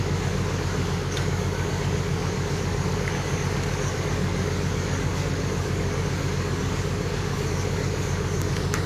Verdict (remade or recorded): remade